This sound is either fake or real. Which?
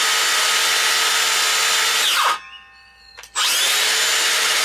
real